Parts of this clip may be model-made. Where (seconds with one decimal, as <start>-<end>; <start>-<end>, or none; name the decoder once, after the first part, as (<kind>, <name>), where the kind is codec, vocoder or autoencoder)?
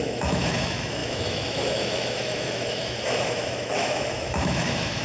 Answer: 0.0-5.0 (autoencoder, DAC-VAE)